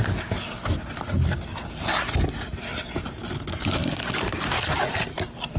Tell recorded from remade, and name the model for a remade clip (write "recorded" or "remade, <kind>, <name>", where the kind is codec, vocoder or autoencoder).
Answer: recorded